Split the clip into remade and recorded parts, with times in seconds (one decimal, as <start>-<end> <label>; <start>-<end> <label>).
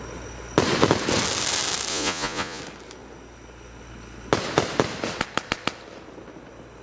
0.0-1.9 recorded; 1.9-2.6 remade; 2.6-6.8 recorded